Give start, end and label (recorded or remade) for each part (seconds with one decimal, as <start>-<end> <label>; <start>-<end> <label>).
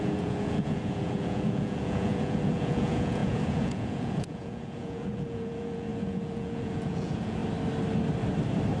0.0-7.4 remade; 7.4-8.8 recorded